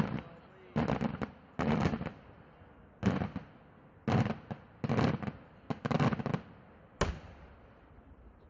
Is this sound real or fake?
real